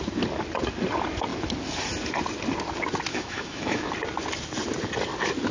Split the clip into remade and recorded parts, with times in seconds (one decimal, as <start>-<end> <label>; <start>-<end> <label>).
0.0-3.1 recorded; 3.1-3.9 remade; 3.9-5.5 recorded